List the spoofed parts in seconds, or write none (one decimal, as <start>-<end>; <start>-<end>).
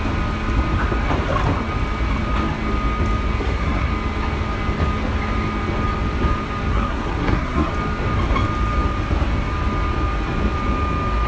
3.4-3.9; 6.7-7.7